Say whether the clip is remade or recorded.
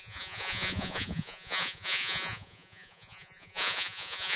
remade